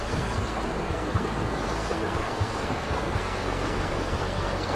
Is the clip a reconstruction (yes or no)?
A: yes